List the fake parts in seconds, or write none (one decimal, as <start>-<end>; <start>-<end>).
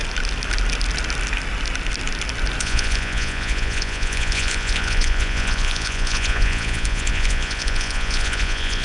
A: 2.6-8.8